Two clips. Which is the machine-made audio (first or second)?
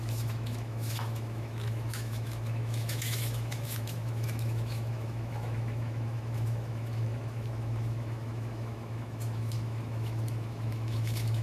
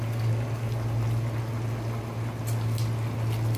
first